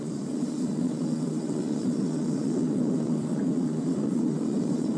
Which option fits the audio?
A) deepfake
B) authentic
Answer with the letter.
A